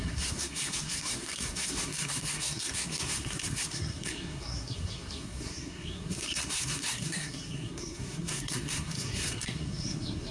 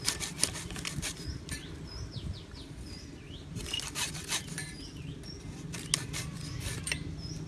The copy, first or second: first